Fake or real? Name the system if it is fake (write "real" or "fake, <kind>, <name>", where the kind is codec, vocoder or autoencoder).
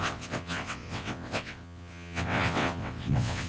fake, vocoder, WaveNeXt